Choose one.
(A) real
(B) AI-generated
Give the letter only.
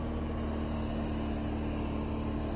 A